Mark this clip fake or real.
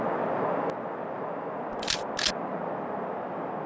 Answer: real